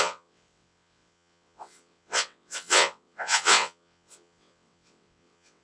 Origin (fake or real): fake